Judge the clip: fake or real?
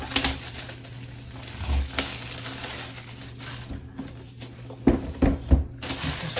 real